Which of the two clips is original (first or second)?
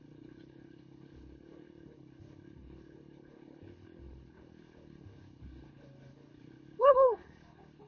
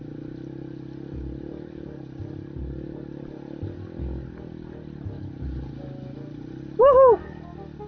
second